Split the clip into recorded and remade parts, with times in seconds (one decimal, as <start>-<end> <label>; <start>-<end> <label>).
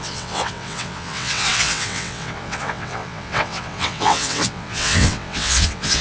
0.0-6.0 remade